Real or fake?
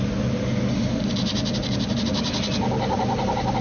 real